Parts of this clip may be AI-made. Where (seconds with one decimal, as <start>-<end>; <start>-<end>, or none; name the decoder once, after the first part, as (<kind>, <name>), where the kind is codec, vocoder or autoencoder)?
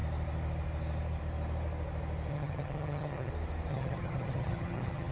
2.3-3.3 (vocoder, HiFi-GAN); 3.7-5.1